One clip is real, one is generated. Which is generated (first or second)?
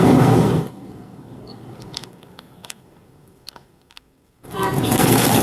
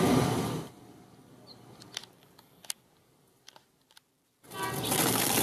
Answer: first